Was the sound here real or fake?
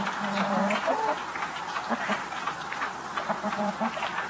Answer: fake